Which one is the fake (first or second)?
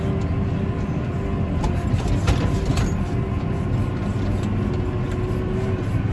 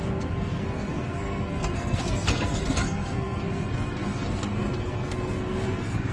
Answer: second